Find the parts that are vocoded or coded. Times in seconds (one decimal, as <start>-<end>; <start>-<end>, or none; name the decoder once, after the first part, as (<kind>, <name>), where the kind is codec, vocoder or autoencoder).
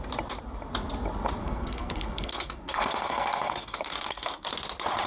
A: 1.4-4.5 (codec, SNAC)